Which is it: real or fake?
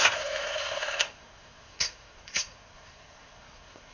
fake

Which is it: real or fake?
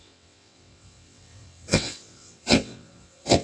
fake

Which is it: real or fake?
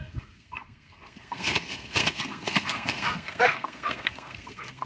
fake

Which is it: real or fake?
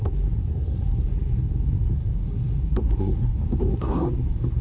fake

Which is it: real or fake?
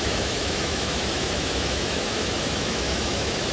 fake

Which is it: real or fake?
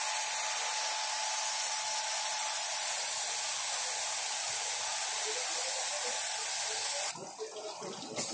real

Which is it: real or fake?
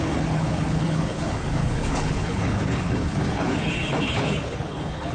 fake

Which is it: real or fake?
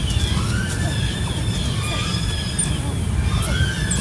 real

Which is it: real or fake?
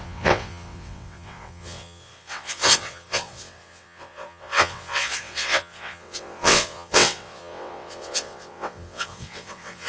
fake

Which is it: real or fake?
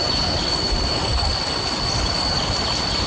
real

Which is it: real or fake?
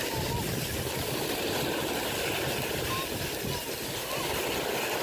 real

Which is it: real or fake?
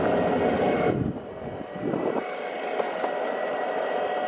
real